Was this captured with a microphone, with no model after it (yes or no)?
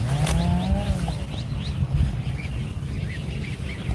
yes